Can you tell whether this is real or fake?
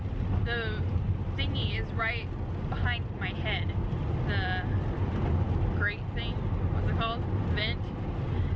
real